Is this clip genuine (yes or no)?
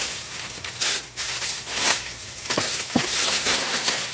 no